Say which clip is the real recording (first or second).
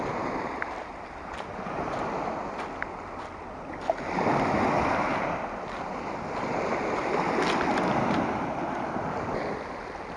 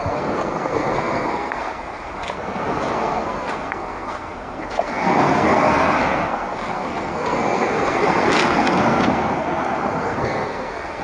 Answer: first